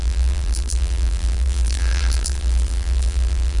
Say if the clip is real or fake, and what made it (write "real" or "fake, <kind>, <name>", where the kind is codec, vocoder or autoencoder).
fake, vocoder, BigVGAN v2